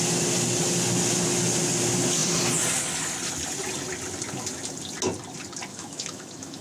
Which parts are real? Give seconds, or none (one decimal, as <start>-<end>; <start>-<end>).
0.0-5.7